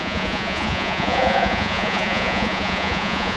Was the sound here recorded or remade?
remade